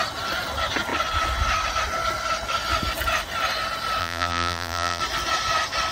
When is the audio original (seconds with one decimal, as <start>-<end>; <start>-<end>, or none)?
0.0-4.0; 5.0-5.9

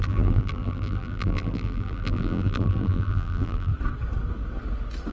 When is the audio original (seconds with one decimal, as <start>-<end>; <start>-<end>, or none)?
3.7-5.1